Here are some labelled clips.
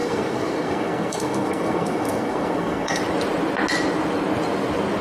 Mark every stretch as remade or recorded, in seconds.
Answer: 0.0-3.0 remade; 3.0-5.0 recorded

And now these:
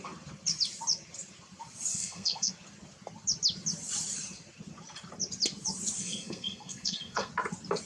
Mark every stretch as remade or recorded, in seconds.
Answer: 0.0-1.9 recorded; 1.9-2.5 remade; 2.5-6.0 recorded; 6.0-7.3 remade; 7.3-7.9 recorded

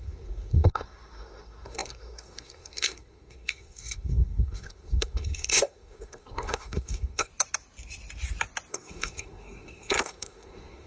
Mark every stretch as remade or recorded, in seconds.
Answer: 0.0-7.3 remade; 7.3-8.7 recorded; 8.7-10.9 remade

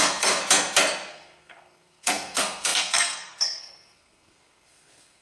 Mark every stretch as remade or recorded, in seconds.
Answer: 0.0-0.4 remade; 0.4-1.1 recorded; 1.1-5.2 remade